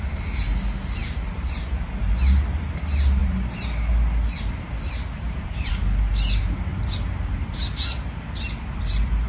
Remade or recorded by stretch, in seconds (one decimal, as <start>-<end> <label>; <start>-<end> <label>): 0.0-1.0 recorded; 1.0-1.5 remade; 1.5-3.2 recorded; 3.2-5.7 remade; 5.7-9.3 recorded